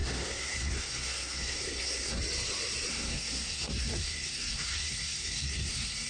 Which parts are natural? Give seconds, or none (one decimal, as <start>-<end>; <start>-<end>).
2.2-2.9